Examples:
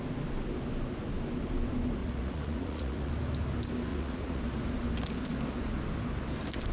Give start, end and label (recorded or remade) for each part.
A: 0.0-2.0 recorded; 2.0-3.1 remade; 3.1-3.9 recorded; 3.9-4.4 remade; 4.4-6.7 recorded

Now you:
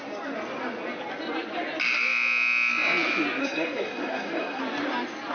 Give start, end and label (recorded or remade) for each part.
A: 0.0-3.4 recorded; 3.4-4.6 remade; 4.6-5.3 recorded

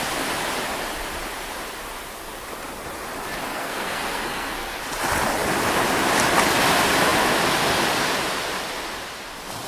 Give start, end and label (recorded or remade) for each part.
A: 0.0-3.5 recorded; 3.5-4.8 remade; 4.8-9.7 recorded

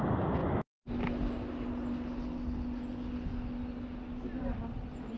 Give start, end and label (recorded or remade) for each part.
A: 0.0-5.2 recorded

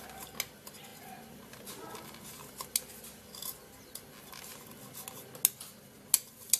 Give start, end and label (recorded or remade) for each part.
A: 0.0-6.6 recorded

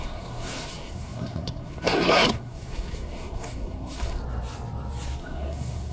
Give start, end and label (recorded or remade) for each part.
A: 0.0-4.2 remade; 4.2-5.2 recorded; 5.2-5.9 remade

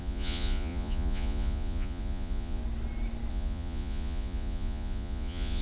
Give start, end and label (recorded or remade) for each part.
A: 0.0-2.6 remade; 2.6-3.3 recorded; 3.3-5.6 remade